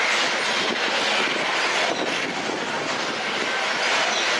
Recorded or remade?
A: recorded